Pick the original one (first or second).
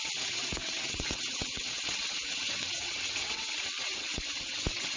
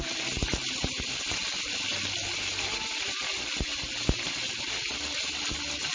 second